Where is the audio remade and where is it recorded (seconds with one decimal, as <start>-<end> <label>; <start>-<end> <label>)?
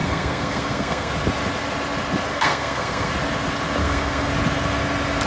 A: 0.0-1.1 remade; 1.1-2.3 recorded; 2.3-3.1 remade; 3.1-3.8 recorded; 3.8-4.3 remade; 4.3-5.3 recorded